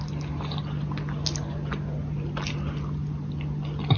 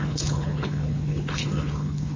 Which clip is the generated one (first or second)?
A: second